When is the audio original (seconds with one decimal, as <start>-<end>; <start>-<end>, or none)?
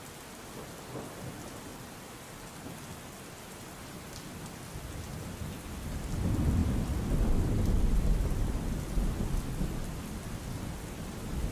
0.0-1.7; 2.7-11.5